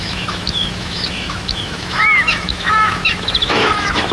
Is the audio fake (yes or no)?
yes